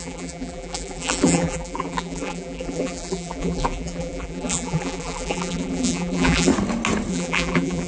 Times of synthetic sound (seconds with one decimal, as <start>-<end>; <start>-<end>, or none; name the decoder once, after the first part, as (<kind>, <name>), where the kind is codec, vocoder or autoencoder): 0.0-6.5 (vocoder, BigVGAN v2); 7.1-7.9